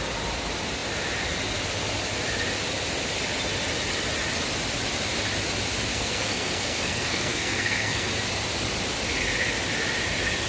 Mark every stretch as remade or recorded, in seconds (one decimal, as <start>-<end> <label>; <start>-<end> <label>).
0.0-5.9 recorded; 5.9-8.1 remade; 8.1-10.5 recorded